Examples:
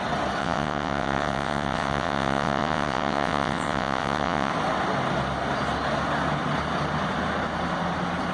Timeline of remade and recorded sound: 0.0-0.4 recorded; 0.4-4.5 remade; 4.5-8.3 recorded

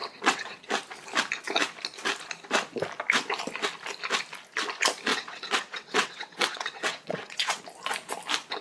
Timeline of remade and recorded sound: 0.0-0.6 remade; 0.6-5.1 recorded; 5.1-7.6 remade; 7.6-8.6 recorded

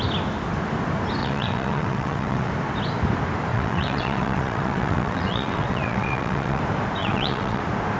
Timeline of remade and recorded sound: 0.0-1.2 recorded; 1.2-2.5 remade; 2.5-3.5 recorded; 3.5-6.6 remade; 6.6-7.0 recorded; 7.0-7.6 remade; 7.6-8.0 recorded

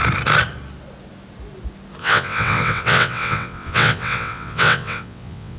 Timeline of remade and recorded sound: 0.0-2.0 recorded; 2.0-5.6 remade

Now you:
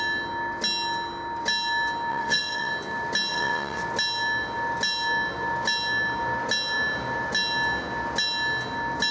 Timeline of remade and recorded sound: 0.0-2.1 recorded; 2.1-2.7 remade; 2.7-3.3 recorded; 3.3-3.8 remade; 3.8-9.1 recorded

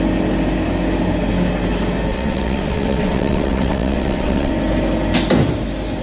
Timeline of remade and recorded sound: 0.0-2.1 recorded; 2.1-4.5 remade; 4.5-6.0 recorded

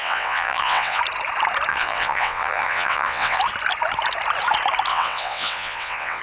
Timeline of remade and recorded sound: 0.0-1.0 remade; 1.0-1.7 recorded; 1.7-3.4 remade; 3.4-4.9 recorded; 4.9-6.2 remade

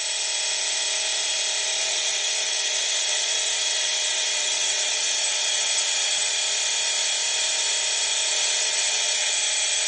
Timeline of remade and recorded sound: 0.0-1.8 recorded; 1.8-6.3 remade; 6.3-8.3 recorded; 8.3-9.3 remade; 9.3-9.9 recorded